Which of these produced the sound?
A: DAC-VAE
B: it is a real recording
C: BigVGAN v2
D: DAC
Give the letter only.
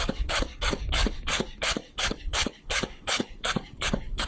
D